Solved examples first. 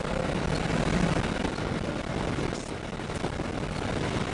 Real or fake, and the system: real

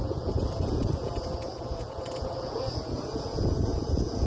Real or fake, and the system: fake, vocoder, Vocos